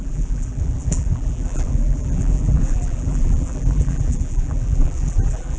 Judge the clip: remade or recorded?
remade